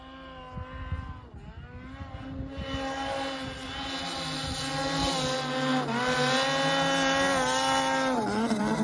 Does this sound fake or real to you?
real